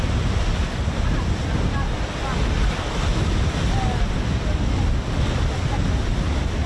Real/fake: real